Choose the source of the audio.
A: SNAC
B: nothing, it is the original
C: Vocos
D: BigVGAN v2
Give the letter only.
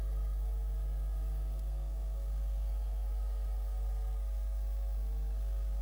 A